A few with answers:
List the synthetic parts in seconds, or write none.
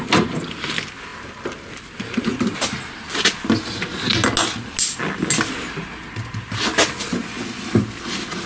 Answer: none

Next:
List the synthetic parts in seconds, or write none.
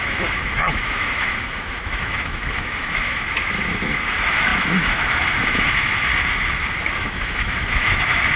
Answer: 0.0-6.1 (autoencoder, DAC-VAE); 7.0-8.4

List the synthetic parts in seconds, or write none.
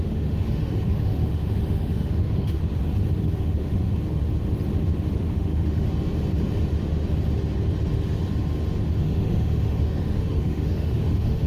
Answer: 0.0-2.6 (autoencoder, DAC-VAE); 3.2-3.9; 5.3-5.9; 9.0-11.5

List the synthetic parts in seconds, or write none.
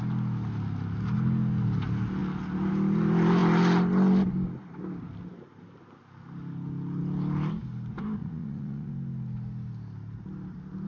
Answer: 8.2-8.9 (vocoder, Vocos)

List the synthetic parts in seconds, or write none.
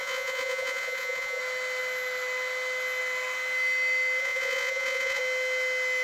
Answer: 0.0-1.4 (vocoder, Vocos); 4.2-5.2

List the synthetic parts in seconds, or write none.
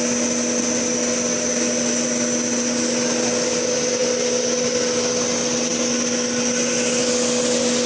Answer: none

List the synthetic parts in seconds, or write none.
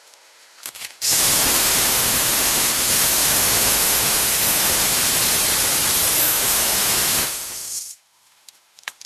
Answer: 0.0-5.0 (autoencoder, DAC-VAE); 6.2-9.1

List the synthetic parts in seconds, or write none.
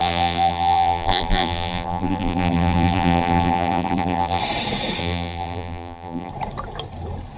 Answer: 0.0-4.4 (vocoder, BigVGAN v2); 5.0-6.3